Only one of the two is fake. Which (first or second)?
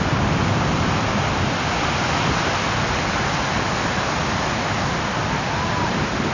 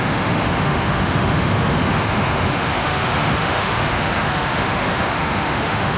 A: second